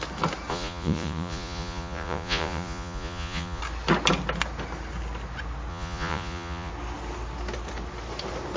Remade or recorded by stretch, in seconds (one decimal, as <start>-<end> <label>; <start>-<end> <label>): 0.0-0.5 recorded; 0.5-3.6 remade; 3.6-5.7 recorded; 5.7-6.7 remade; 6.7-8.6 recorded